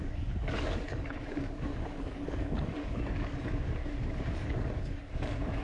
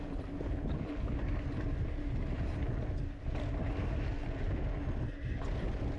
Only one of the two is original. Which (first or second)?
second